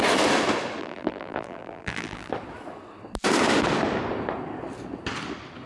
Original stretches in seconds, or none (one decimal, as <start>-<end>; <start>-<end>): 0.0-0.8; 2.3-5.7